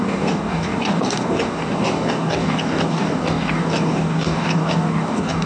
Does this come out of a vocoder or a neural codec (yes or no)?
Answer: yes